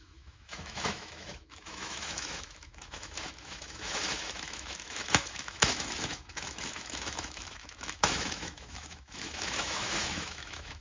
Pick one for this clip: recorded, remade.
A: remade